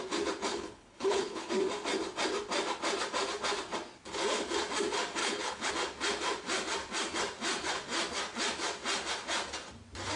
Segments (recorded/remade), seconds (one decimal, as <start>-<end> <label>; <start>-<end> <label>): 0.0-0.5 recorded; 0.5-1.5 remade; 1.5-5.2 recorded; 5.2-5.7 remade; 5.7-10.2 recorded